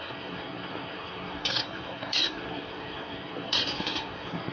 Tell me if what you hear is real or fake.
fake